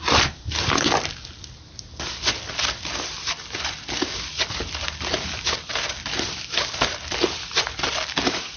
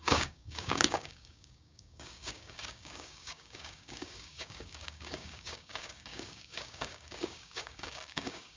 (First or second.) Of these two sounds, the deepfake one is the second